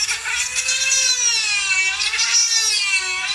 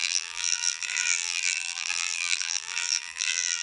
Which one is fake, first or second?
second